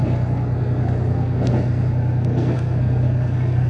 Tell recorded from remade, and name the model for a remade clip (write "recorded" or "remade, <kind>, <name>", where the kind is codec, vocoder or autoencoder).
remade, codec, SNAC